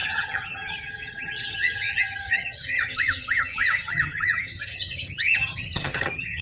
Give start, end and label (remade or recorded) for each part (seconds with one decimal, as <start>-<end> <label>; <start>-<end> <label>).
0.0-6.4 remade